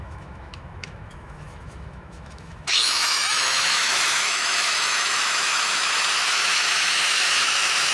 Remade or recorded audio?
remade